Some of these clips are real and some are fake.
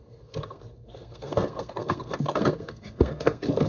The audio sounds fake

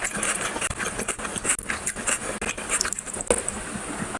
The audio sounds real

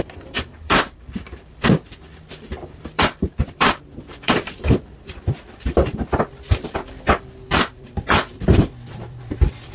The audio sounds fake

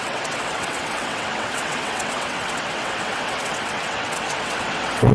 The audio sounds fake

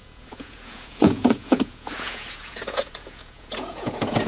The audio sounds fake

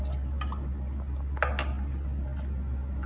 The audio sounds real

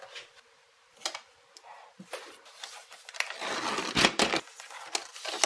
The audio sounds real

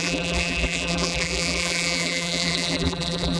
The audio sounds fake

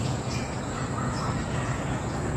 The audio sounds fake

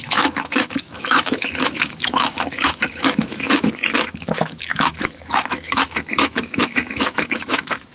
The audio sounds fake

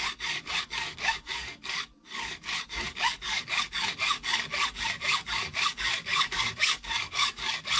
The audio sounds fake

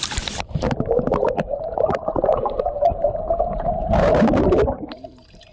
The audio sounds fake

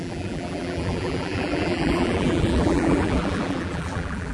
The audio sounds fake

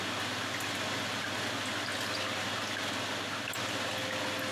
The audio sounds real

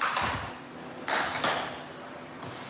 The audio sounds real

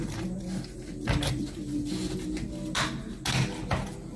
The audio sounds real